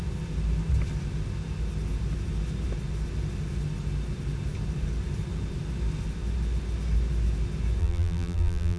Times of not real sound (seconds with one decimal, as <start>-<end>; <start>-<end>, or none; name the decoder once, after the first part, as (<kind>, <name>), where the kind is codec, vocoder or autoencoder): 7.8-8.8 (vocoder, BigVGAN v2)